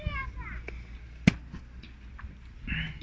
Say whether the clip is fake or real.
real